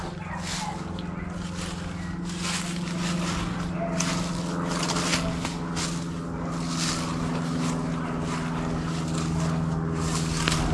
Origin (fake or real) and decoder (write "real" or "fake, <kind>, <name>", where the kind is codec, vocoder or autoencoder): real